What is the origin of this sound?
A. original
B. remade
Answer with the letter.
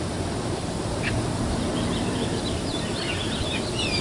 A